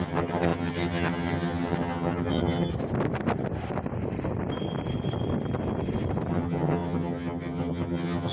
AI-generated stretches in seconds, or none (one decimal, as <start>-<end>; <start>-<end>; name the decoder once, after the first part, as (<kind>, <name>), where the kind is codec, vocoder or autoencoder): 0.0-2.7 (vocoder, HiFi-GAN); 6.3-8.3